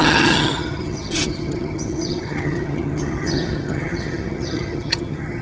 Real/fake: fake